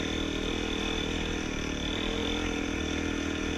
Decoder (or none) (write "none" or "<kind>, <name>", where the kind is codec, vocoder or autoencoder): vocoder, BigVGAN v2